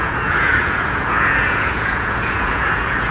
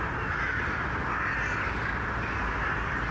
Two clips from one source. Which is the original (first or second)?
second